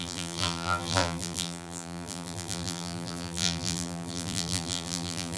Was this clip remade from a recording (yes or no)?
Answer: yes